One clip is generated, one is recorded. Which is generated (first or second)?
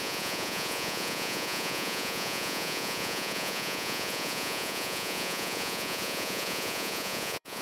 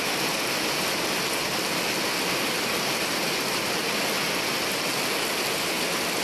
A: first